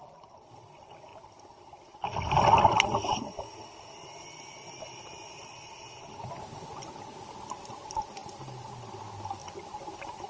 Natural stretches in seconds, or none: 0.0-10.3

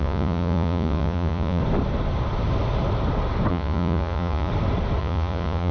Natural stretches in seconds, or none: 1.6-3.5; 4.5-5.0

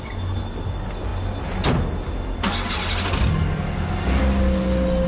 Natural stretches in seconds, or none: 0.0-5.1